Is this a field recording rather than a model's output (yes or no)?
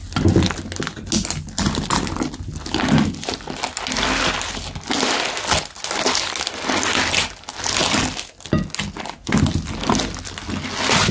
yes